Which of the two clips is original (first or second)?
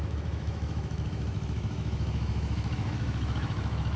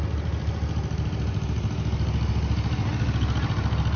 second